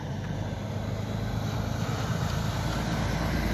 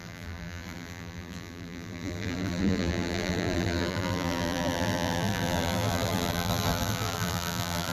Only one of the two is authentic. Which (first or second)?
first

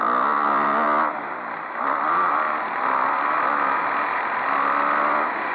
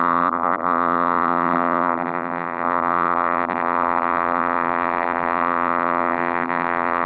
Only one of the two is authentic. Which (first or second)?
first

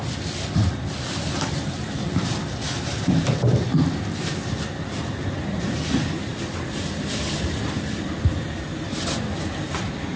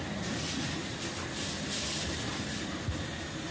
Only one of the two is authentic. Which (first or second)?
second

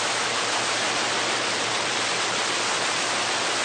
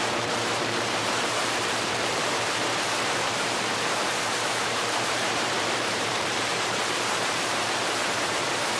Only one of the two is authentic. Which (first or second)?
first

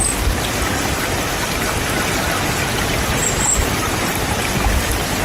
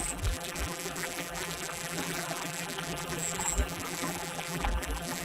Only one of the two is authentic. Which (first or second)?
first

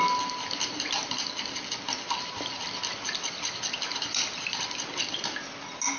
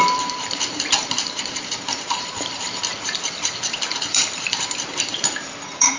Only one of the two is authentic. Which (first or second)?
first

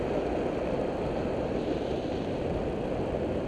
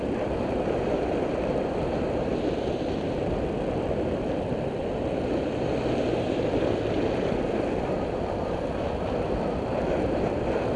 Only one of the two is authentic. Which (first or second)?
first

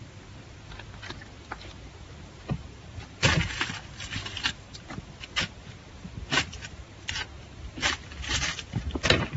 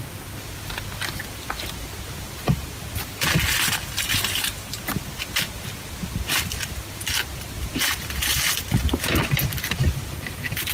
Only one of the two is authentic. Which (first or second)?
second